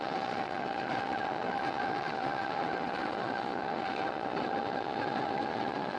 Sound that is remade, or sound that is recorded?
remade